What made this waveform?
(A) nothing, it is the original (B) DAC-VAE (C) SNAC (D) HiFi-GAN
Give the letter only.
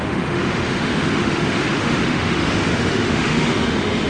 B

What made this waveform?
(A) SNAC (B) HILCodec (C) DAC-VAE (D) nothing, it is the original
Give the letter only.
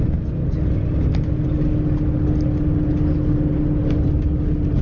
D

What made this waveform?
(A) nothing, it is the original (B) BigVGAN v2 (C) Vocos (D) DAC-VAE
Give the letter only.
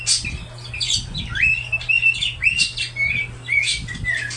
A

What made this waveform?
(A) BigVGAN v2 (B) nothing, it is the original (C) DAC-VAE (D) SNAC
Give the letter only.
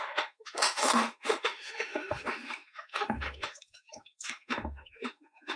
C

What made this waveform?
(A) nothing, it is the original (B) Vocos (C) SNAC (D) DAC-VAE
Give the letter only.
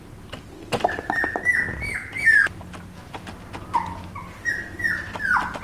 A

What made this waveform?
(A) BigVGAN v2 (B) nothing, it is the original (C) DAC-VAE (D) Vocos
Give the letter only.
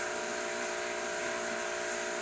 B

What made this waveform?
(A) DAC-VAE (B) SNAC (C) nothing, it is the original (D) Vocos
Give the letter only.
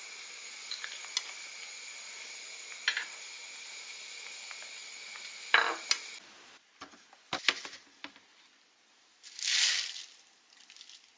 C